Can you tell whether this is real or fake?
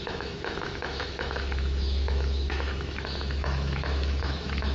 fake